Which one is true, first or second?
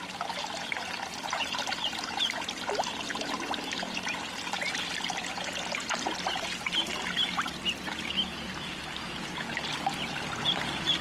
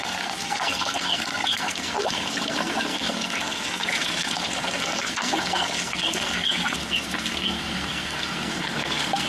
first